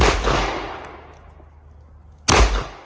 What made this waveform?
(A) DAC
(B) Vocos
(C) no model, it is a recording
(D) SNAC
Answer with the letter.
C